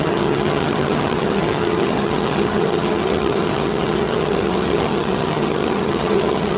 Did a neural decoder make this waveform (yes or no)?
yes